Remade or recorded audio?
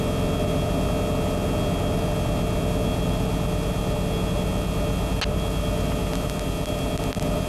recorded